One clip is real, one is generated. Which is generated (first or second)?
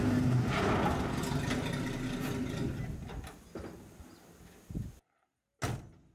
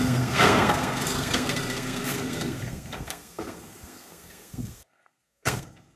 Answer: second